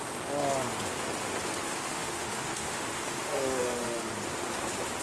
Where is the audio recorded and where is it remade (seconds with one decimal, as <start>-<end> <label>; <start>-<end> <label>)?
0.0-1.6 recorded; 1.6-4.1 remade; 4.1-5.0 recorded